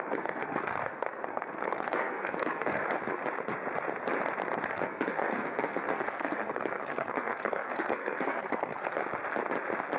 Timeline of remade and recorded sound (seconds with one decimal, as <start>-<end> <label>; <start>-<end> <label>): 0.0-3.2 remade; 3.2-4.7 recorded; 4.7-9.0 remade; 9.0-10.0 recorded